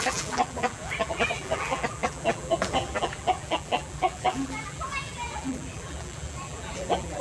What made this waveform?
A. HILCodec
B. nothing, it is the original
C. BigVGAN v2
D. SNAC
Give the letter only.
C